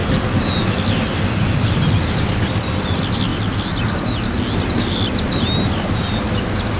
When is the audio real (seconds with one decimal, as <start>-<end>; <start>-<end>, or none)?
0.0-6.8